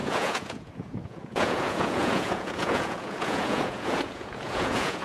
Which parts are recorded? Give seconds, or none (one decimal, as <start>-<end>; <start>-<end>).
none